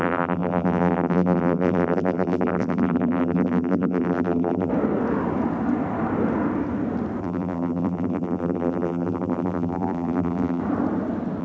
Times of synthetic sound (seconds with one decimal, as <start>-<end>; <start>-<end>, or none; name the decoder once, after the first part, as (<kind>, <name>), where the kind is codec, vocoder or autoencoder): 0.0-4.7 (vocoder, BigVGAN v2); 7.2-10.6